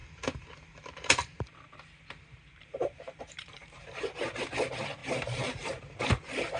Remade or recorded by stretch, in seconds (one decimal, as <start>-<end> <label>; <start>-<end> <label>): 0.0-4.0 remade; 4.0-5.0 recorded; 5.0-6.0 remade; 6.0-6.6 recorded